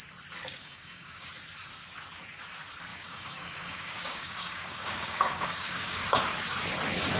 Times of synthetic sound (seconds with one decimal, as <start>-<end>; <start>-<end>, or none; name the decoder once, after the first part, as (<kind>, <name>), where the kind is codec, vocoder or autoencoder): 0.6-1.3 (codec, DAC); 2.9-6.2